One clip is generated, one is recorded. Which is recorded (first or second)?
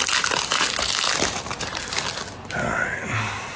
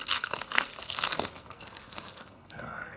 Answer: first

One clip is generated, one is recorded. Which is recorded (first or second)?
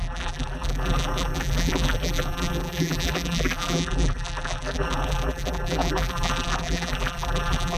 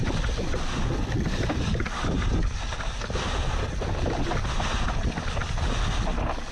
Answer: second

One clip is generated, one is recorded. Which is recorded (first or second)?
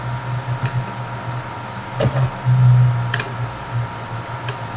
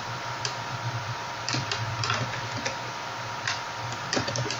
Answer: first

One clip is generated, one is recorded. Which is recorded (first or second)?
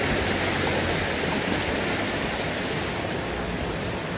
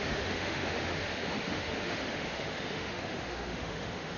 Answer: first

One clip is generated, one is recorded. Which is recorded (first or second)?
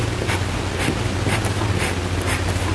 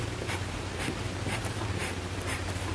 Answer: first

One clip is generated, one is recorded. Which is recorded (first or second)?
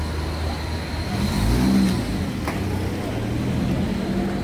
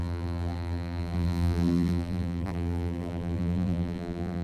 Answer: first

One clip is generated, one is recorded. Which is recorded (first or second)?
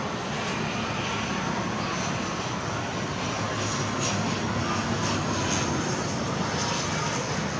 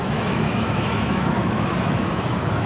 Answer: first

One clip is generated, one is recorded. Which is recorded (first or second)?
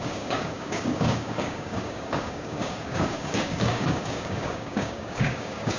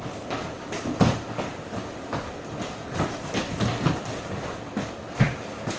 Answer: second